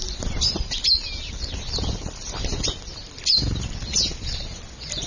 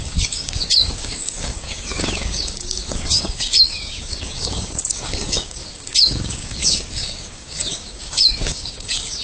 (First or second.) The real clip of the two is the first